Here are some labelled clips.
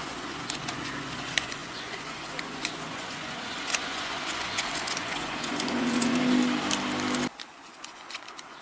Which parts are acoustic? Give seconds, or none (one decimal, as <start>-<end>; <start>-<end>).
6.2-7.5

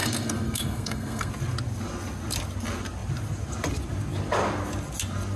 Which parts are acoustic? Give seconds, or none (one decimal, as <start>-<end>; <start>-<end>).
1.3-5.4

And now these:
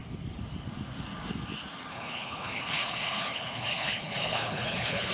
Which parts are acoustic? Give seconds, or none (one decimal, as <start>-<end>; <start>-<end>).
0.0-1.9

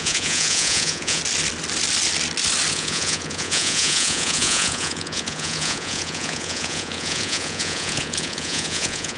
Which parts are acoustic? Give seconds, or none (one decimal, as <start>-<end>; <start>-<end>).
1.2-2.7

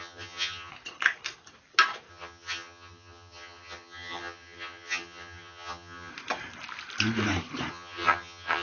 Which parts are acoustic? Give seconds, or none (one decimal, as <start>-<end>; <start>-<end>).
0.7-2.1; 6.1-7.7